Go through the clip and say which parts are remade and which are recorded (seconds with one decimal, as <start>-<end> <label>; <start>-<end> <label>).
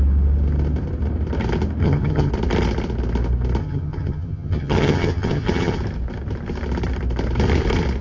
0.0-1.8 recorded; 1.8-2.3 remade; 2.3-3.6 recorded; 3.6-5.8 remade; 5.8-8.0 recorded